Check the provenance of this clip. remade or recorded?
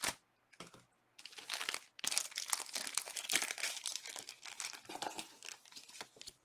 recorded